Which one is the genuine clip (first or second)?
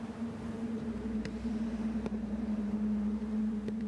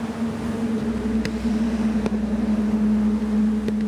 second